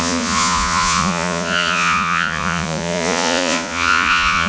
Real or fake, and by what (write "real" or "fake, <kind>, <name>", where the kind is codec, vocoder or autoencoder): fake, vocoder, Vocos